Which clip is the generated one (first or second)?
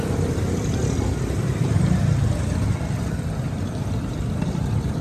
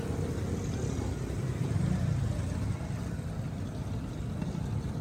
first